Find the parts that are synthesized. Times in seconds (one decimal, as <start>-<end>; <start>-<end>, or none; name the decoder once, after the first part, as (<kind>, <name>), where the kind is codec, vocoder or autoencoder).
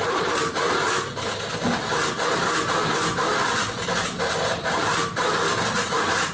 0.0-0.8 (vocoder, BigVGAN v2); 4.6-6.3